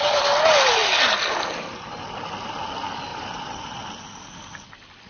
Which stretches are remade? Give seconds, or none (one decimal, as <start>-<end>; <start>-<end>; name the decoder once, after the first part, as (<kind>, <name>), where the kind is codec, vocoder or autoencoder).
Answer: 3.1-3.8 (vocoder, Vocos)